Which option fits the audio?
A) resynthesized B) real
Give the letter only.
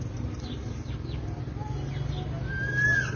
B